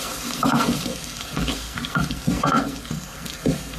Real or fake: fake